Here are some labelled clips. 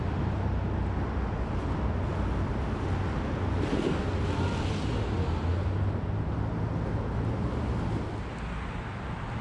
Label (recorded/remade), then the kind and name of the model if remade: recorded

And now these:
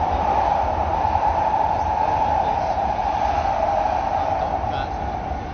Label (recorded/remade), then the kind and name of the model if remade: recorded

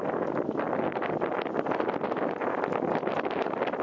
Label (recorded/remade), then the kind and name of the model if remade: recorded